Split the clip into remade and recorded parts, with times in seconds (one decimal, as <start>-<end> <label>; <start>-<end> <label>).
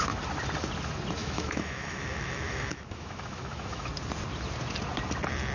0.0-1.2 recorded; 1.2-3.9 remade; 3.9-5.5 recorded